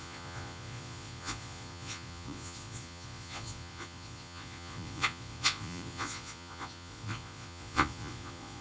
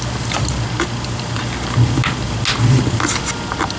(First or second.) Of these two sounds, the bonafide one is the second